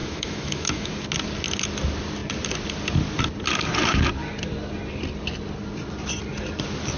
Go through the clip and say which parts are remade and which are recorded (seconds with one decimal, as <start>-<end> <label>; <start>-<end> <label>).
0.0-0.9 remade; 0.9-7.0 recorded